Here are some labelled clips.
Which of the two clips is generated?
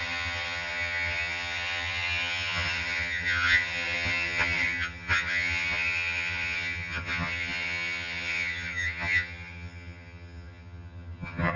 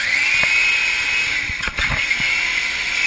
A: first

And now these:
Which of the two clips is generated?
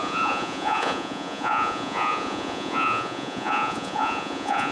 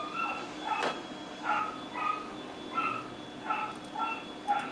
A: first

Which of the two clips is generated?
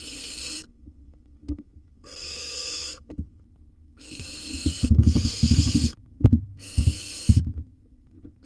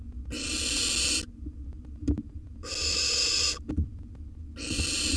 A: first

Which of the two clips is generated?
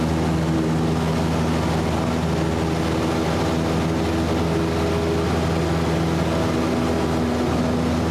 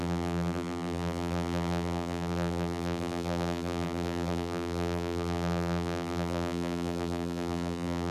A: second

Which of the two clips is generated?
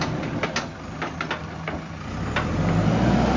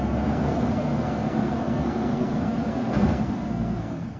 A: second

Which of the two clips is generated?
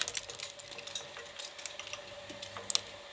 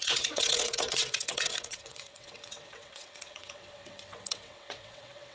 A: second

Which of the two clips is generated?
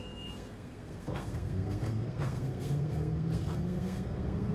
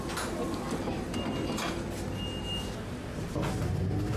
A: first